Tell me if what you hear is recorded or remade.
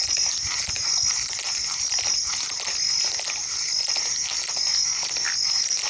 recorded